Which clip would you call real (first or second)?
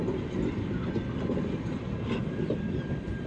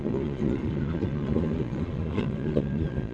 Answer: first